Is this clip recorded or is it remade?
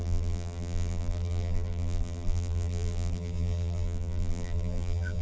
remade